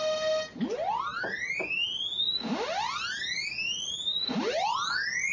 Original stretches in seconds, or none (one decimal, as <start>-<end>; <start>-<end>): 0.0-5.3